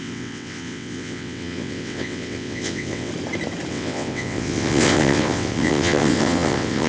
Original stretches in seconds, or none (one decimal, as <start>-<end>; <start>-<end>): 3.1-3.7

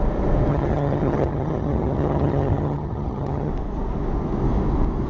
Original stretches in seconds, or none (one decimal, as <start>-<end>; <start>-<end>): 0.0-0.5; 3.5-5.1

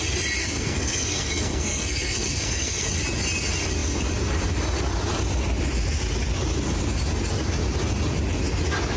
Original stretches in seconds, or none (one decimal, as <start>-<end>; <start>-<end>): 0.0-0.4; 2.9-9.0

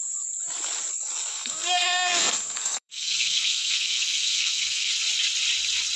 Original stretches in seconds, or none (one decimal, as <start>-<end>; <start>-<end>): 0.0-1.3; 4.9-6.0

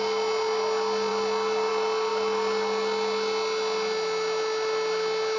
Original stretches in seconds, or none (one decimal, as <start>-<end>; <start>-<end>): 0.0-5.4